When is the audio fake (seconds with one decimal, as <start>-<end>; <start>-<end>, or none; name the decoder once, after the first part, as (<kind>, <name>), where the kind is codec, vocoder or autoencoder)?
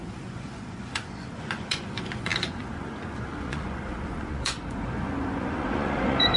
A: 0.0-6.4 (vocoder, Vocos)